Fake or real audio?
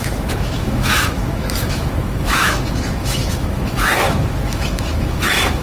fake